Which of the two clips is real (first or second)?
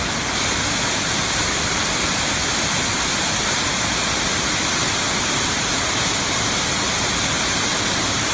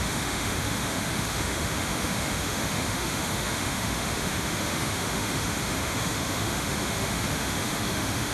first